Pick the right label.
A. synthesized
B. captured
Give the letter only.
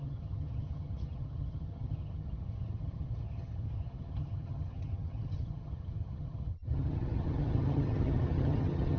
A